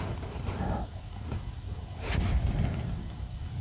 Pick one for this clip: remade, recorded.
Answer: recorded